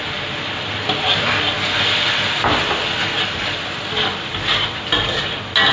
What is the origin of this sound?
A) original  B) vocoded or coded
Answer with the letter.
A